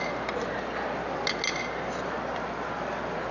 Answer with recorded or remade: recorded